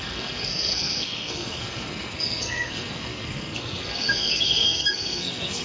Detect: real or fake fake